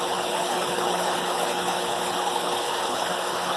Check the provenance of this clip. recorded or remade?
remade